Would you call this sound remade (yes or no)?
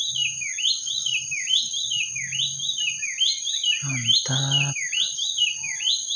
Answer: yes